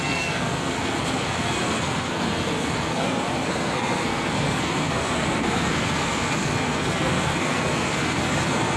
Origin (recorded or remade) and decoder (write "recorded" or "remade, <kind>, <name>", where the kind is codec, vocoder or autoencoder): remade, codec, SNAC